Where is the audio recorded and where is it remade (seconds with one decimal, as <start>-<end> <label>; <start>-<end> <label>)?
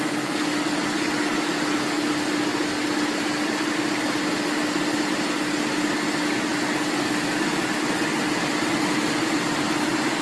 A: 0.0-10.2 recorded